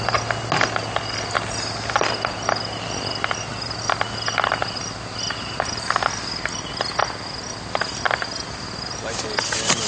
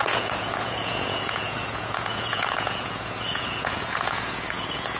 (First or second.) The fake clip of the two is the second